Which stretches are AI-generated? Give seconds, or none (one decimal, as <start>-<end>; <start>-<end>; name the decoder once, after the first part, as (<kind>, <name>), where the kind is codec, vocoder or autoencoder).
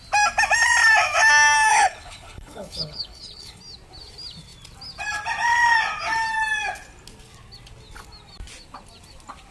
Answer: 1.7-3.6 (codec, HILCodec)